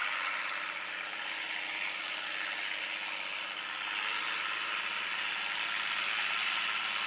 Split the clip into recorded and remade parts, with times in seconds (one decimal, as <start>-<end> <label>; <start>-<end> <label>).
0.0-2.3 remade; 2.3-4.2 recorded; 4.2-5.4 remade; 5.4-7.1 recorded